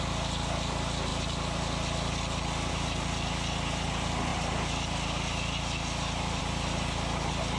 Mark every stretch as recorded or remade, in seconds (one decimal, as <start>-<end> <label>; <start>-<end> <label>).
0.0-7.6 recorded